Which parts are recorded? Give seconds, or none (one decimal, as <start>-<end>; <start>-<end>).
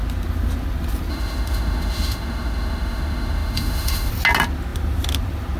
0.0-1.1; 4.1-5.6